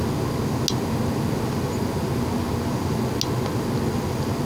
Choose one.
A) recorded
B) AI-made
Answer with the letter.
A